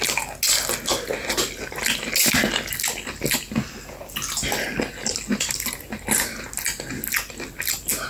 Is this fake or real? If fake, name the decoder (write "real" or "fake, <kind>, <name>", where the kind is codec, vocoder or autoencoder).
real